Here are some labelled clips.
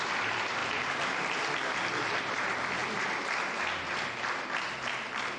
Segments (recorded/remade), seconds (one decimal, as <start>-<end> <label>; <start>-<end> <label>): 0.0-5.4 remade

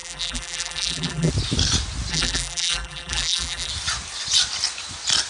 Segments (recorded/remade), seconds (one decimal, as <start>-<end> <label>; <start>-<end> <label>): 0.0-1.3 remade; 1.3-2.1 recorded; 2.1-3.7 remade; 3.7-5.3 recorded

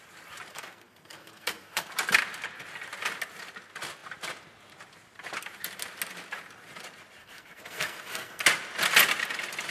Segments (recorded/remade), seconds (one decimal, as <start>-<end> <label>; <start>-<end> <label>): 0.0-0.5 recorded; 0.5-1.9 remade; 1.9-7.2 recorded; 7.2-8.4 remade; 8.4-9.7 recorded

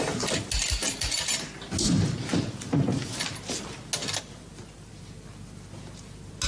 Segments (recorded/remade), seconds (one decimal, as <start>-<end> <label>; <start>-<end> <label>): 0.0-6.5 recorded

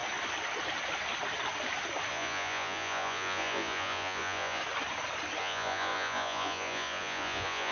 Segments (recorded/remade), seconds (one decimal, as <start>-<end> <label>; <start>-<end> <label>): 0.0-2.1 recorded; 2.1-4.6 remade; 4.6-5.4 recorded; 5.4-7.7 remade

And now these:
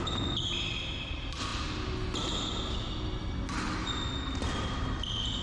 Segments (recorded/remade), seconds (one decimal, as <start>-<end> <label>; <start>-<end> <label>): 0.0-5.4 recorded